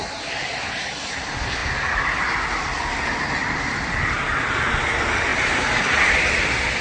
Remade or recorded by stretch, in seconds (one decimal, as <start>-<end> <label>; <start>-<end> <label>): 0.0-3.4 recorded; 3.4-4.6 remade; 4.6-5.3 recorded; 5.3-6.2 remade; 6.2-6.8 recorded